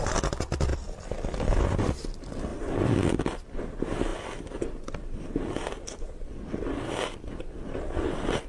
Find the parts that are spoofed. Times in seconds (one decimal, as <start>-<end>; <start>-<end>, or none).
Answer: 0.7-1.6; 4.1-7.4